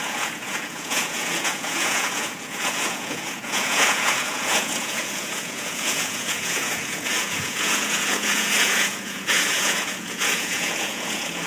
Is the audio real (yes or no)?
no